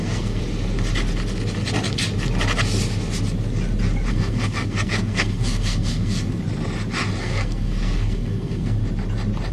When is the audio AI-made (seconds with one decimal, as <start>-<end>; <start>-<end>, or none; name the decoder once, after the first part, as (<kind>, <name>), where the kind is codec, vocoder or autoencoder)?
0.0-0.4 (codec, SNAC); 4.1-6.4; 7.2-8.8